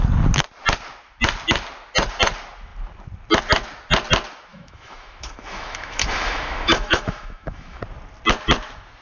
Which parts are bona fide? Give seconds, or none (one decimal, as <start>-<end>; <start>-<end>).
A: 0.0-4.5; 7.8-9.0